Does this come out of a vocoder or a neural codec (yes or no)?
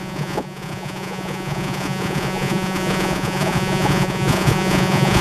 yes